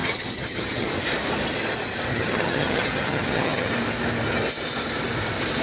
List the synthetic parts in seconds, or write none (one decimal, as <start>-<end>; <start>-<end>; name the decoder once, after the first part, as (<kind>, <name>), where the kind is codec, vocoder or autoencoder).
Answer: 0.0-0.9 (vocoder, HiFi-GAN); 2.1-3.7